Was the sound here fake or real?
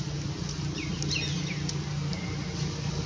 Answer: real